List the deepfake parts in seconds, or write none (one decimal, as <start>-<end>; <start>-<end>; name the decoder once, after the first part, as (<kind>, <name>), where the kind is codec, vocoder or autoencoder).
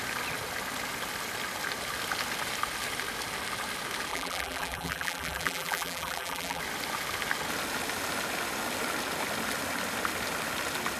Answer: 4.1-6.6 (vocoder, BigVGAN v2)